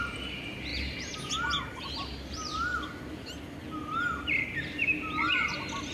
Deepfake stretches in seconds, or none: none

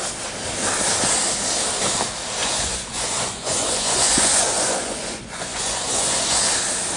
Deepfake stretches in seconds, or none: 2.4-6.5 (vocoder, Vocos)

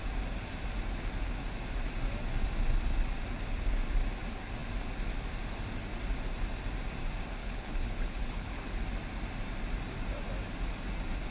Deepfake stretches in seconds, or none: 7.4-8.8 (codec, HILCodec)

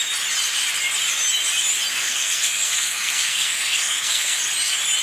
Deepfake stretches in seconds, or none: 1.9-4.4 (codec, SNAC)

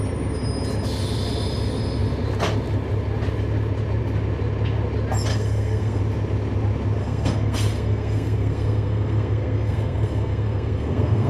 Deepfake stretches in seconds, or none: 5.3-6.0 (codec, SNAC); 7.0-11.3

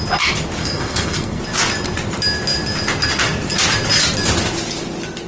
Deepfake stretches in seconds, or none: 0.6-1.4 (codec, SNAC)